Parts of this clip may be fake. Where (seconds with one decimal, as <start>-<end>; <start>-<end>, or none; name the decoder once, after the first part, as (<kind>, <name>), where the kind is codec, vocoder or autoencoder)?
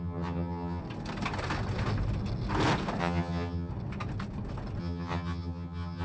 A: 0.0-0.8 (vocoder, HiFi-GAN); 3.0-3.7; 4.8-6.0